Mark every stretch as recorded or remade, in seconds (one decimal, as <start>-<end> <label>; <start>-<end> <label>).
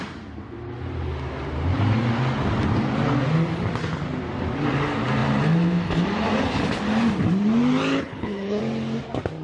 0.0-7.9 recorded; 7.9-8.6 remade; 8.6-9.4 recorded